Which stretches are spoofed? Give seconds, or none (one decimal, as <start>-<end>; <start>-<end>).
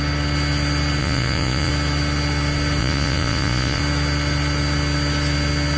1.0-1.7; 2.8-3.8